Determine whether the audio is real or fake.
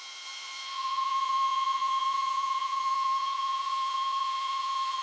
fake